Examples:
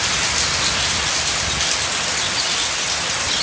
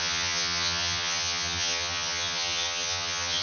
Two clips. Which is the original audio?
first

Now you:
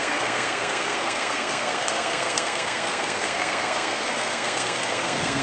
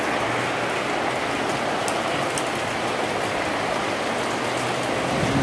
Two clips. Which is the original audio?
second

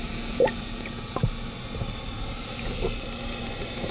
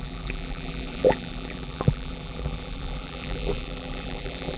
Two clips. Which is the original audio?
first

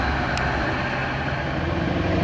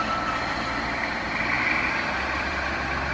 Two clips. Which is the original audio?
first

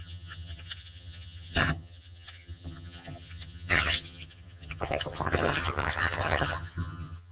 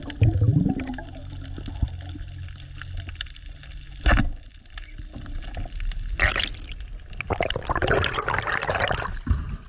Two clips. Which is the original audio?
second